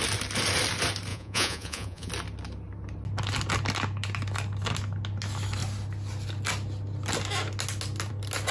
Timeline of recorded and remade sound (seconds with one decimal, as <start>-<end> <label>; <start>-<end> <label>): 0.0-1.1 recorded; 1.1-2.1 remade; 2.1-8.5 recorded